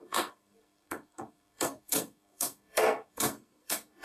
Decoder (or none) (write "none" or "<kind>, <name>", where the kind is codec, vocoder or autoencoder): codec, SNAC